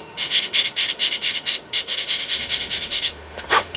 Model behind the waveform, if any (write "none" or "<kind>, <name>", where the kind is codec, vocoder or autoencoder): autoencoder, DAC-VAE